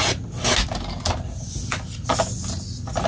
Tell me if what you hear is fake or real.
real